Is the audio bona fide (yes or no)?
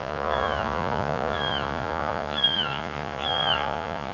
no